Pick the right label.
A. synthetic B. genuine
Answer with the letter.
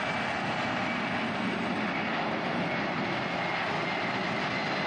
B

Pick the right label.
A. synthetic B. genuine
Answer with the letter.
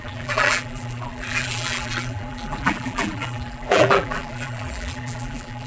A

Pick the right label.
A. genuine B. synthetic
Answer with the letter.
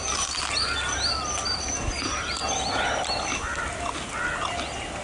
A